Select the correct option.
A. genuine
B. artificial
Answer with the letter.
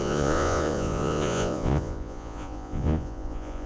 B